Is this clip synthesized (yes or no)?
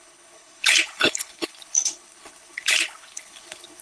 yes